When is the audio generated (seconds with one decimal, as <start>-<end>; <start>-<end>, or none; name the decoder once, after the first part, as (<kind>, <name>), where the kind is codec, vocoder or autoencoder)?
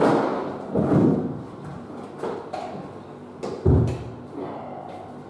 none